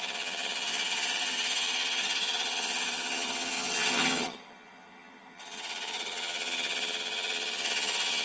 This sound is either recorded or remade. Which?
remade